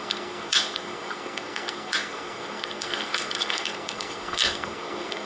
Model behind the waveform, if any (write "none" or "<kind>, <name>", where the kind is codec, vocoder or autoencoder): codec, SNAC